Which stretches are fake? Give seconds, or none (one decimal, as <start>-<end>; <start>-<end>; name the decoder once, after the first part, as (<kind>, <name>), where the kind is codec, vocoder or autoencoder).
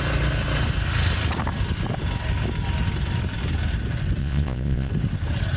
4.2-4.9 (vocoder, Vocos)